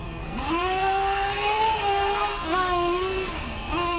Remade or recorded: remade